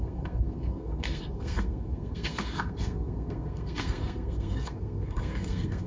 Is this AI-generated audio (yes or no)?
yes